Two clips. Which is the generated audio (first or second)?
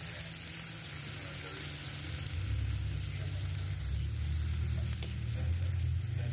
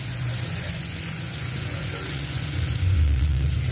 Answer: second